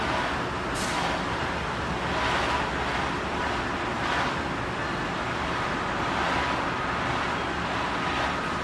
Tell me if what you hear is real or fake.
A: real